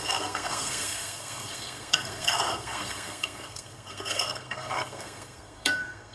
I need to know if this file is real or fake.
fake